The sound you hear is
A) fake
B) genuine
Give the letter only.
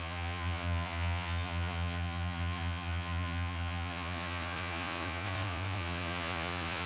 A